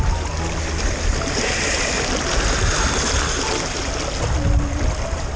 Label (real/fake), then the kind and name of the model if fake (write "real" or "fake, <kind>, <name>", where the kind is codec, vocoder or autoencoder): real